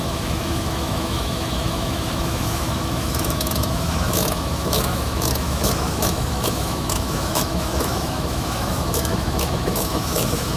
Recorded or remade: remade